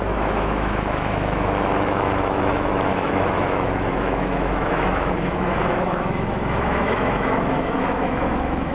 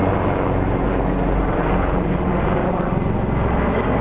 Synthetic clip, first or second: first